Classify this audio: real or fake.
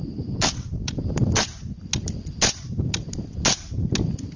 real